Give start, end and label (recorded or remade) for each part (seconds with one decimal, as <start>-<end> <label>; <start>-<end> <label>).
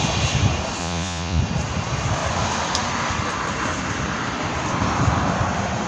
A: 0.0-0.8 recorded; 0.8-1.4 remade; 1.4-5.9 recorded